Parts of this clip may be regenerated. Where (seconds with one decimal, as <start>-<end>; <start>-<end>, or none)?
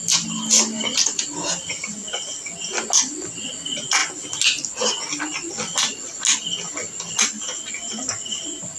none